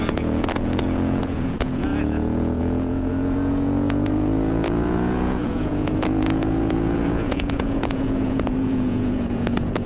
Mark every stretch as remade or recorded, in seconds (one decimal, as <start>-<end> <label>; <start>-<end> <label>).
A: 0.0-9.9 remade